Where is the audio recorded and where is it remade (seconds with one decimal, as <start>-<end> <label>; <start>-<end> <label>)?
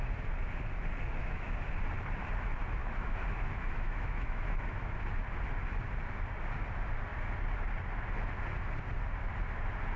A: 0.0-1.2 recorded; 1.2-1.7 remade; 1.7-2.8 recorded; 2.8-5.0 remade; 5.0-10.0 recorded